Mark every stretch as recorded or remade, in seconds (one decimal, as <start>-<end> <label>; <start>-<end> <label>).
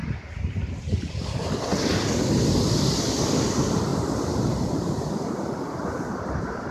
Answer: 0.0-1.1 recorded; 1.1-1.7 remade; 1.7-3.0 recorded; 3.0-6.7 remade